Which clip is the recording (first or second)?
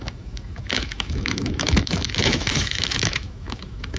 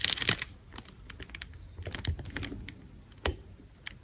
second